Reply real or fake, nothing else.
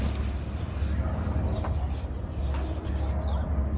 real